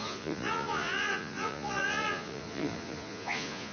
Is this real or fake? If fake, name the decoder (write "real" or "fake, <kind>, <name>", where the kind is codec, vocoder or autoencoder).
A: fake, vocoder, Vocos